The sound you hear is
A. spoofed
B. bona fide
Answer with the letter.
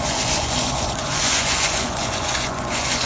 A